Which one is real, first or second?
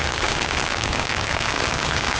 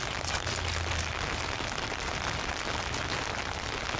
second